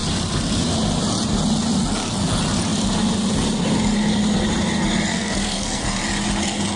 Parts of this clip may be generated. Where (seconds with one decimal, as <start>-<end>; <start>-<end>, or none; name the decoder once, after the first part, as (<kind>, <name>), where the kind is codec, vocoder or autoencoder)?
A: 5.1-5.8 (codec, SNAC)